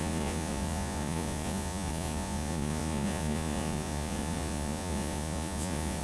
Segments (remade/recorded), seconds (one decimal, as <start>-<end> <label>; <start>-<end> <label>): 0.0-6.0 remade